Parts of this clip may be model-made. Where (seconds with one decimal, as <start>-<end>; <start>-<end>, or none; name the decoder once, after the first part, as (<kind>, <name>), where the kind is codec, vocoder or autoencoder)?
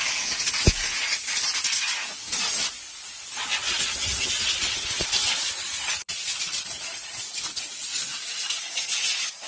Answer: 3.6-7.2 (vocoder, WaveNeXt)